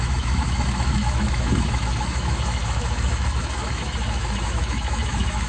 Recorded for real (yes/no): no